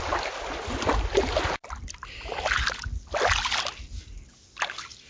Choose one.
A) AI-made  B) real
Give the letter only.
B